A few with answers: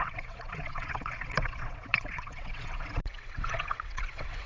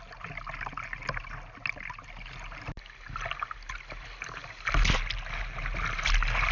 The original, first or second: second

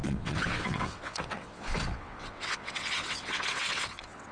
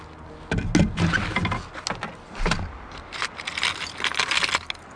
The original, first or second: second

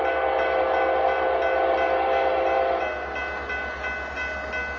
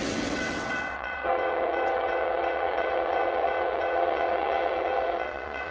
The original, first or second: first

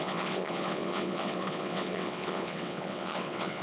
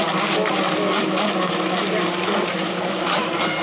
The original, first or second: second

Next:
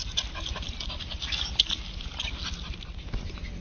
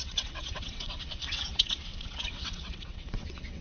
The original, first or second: first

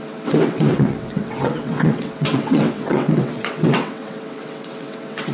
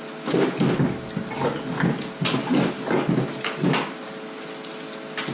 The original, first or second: second